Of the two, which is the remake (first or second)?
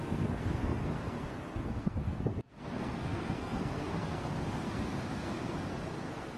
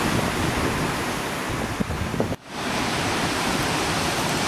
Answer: first